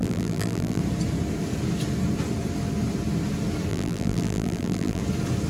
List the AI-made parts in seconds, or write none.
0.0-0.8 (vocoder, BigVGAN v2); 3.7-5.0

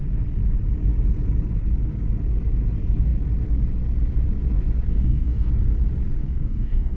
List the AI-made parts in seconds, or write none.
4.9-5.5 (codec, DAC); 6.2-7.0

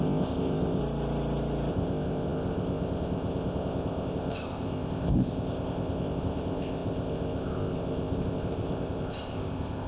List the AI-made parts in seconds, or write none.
0.0-0.8 (codec, ZipCodec); 1.7-9.9

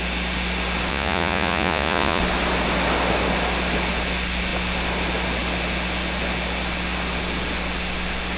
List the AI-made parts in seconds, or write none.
0.9-2.2 (vocoder, Vocos)